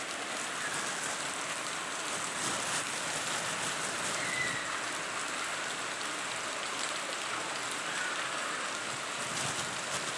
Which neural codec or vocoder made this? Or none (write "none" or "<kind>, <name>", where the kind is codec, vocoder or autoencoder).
none